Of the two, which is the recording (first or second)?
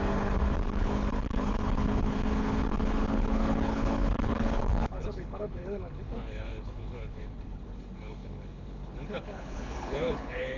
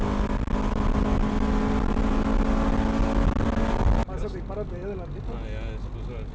second